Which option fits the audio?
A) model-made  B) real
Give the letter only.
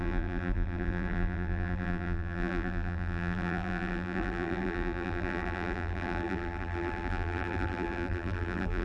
A